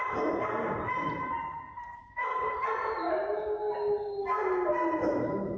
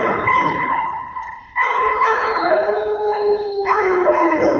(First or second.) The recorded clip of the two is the first